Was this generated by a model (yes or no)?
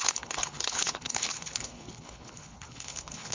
yes